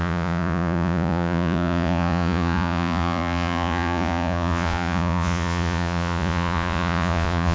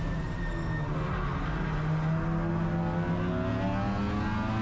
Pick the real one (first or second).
second